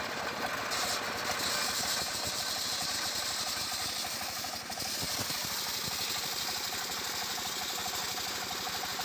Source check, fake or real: real